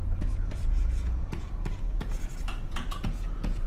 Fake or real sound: fake